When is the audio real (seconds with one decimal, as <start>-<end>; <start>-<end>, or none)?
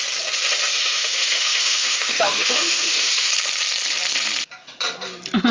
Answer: 0.0-0.7; 3.3-5.5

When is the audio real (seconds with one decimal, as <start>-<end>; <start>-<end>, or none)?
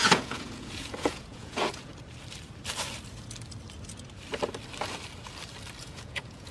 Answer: 1.9-5.8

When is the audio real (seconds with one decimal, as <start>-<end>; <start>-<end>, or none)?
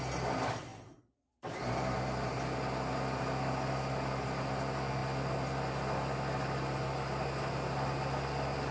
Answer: 0.0-8.7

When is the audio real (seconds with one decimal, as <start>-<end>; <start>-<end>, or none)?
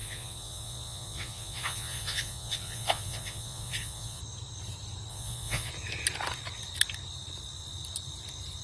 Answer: 4.2-5.1; 5.7-8.6